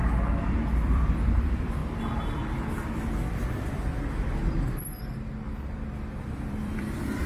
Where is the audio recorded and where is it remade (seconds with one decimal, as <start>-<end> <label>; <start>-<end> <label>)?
0.0-0.8 recorded; 0.8-1.8 remade; 1.8-6.2 recorded; 6.2-7.3 remade